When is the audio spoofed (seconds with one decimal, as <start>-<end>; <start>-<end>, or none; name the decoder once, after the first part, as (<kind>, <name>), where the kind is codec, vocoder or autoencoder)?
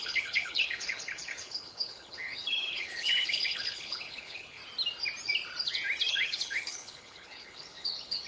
0.0-4.6 (codec, HILCodec); 6.1-8.3